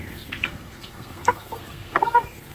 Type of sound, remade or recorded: remade